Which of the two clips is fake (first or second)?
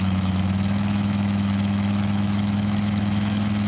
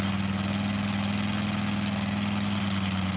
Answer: first